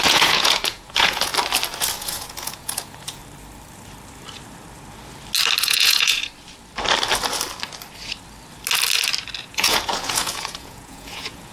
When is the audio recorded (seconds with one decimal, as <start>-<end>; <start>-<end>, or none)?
1.3-2.0; 3.2-5.6; 6.2-9.4